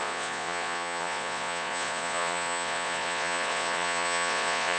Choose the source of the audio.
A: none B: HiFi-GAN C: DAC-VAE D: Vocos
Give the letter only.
D